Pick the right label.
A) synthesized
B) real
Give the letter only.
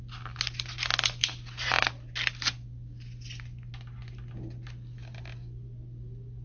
B